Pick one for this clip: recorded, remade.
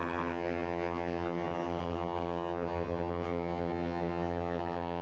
remade